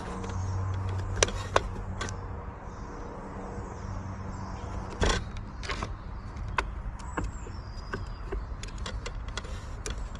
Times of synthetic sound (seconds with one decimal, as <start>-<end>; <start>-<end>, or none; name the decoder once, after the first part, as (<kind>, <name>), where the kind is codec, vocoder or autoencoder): none